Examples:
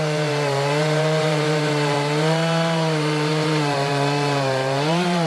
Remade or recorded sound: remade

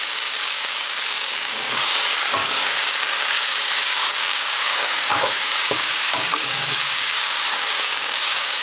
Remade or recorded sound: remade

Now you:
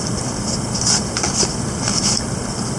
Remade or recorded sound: remade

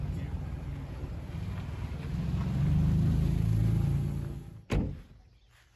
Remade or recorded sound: recorded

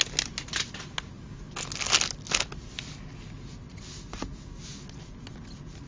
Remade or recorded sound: recorded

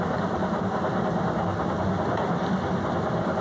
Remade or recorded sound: recorded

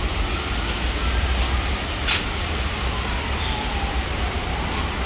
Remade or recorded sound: recorded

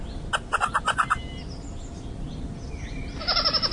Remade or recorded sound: recorded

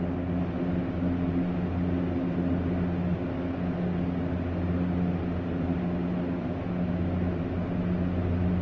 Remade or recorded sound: recorded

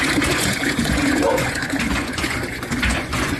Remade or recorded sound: remade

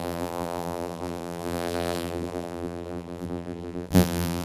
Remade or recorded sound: remade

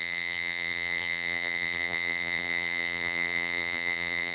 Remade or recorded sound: remade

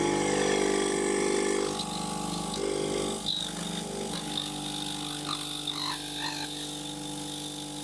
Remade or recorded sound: recorded